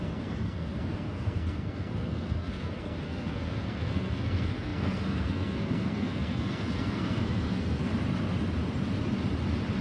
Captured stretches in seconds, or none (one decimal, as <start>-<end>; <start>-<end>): 7.9-9.8